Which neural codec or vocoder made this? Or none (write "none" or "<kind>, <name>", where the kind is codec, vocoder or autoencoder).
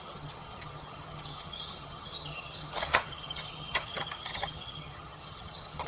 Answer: vocoder, HiFi-GAN